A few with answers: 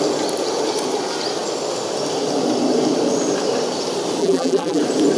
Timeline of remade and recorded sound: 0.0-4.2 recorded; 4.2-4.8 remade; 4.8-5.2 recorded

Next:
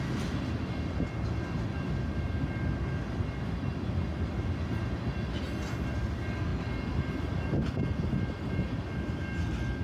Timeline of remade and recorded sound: 0.0-9.8 recorded

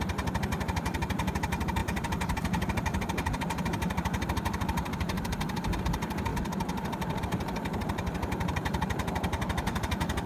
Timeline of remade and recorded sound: 0.0-1.8 recorded; 1.8-5.8 remade; 5.8-6.3 recorded; 6.3-7.2 remade; 7.2-10.3 recorded

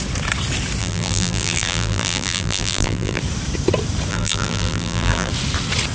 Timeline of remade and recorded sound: 0.0-0.8 recorded; 0.8-3.2 remade; 3.2-4.1 recorded; 4.1-5.3 remade; 5.3-5.9 recorded

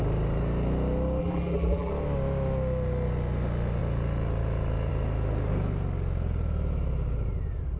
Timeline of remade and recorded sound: 0.0-1.2 recorded; 1.2-1.9 remade; 1.9-7.8 recorded

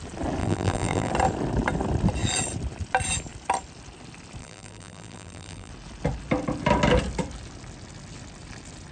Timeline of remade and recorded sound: 0.0-0.4 recorded; 0.4-1.1 remade; 1.1-4.4 recorded; 4.4-5.7 remade; 5.7-8.9 recorded

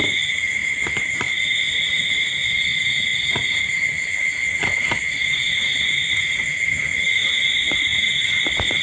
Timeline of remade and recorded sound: 0.0-5.5 recorded; 5.5-6.3 remade; 6.3-8.8 recorded

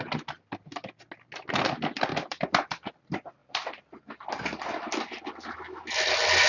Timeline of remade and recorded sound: 0.0-2.1 recorded; 2.1-2.9 remade; 2.9-3.4 recorded; 3.4-4.0 remade; 4.0-6.5 recorded